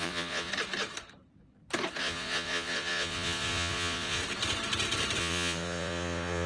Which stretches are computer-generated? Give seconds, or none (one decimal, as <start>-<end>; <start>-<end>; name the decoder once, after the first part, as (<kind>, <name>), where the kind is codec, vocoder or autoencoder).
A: 0.0-0.5 (vocoder, Vocos); 2.0-4.2; 5.2-6.5